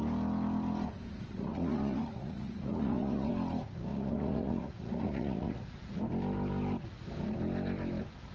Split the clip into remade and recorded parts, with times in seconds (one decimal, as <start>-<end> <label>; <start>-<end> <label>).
0.0-1.3 recorded; 1.3-3.3 remade; 3.3-3.9 recorded; 3.9-6.0 remade; 6.0-8.3 recorded